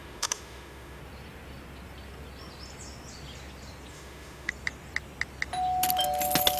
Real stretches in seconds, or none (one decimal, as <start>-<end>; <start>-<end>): 1.0-3.9; 4.5-6.6